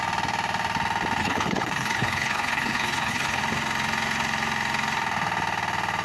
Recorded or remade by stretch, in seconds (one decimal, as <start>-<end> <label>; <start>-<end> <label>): 0.0-1.2 recorded; 1.2-3.4 remade; 3.4-6.0 recorded